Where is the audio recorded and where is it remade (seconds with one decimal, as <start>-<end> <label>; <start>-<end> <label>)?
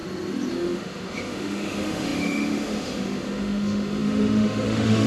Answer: 0.0-0.5 recorded; 0.5-5.1 remade